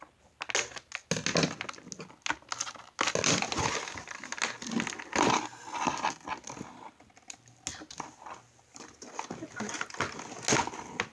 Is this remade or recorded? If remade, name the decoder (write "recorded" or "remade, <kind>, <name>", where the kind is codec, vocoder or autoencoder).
recorded